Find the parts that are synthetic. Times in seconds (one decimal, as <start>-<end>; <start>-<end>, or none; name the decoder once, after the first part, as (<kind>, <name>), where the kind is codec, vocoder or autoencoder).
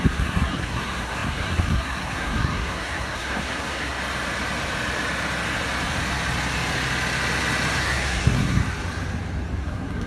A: 0.0-4.0 (codec, SNAC); 7.8-8.6; 9.6-10.1